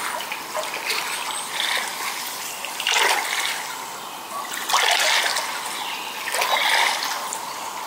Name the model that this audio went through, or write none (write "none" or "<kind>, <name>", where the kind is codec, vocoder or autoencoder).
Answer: none